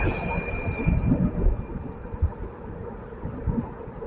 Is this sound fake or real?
real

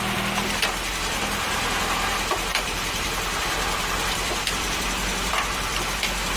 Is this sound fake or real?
fake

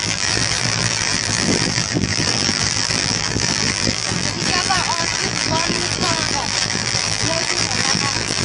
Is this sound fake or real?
fake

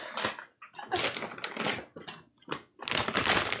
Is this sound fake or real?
real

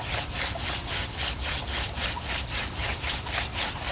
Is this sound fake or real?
real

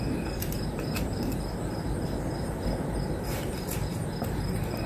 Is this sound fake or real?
fake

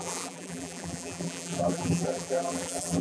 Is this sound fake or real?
fake